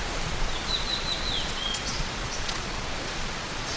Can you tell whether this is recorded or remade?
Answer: remade